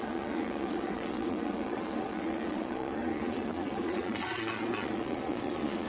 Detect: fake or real fake